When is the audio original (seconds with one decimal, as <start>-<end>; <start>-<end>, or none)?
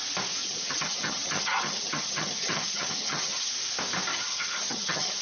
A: 0.0-0.4; 3.5-4.1